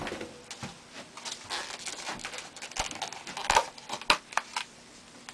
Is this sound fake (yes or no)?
no